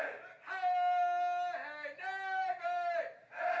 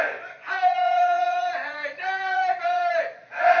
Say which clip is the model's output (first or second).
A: second